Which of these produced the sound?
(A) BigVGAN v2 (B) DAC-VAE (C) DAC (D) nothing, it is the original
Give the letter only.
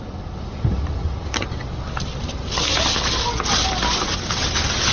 D